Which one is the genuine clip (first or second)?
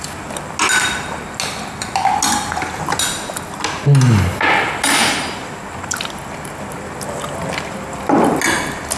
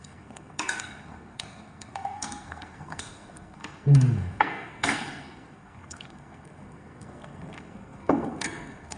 first